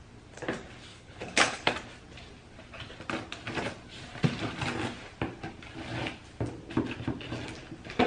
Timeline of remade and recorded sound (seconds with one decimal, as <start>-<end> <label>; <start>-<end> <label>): 0.0-0.9 recorded; 0.9-1.7 remade; 1.7-8.1 recorded